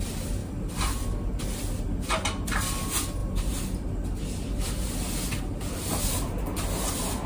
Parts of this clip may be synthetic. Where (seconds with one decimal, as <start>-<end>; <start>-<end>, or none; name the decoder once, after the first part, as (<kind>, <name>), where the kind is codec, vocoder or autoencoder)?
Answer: 0.4-1.4 (vocoder, BigVGAN v2)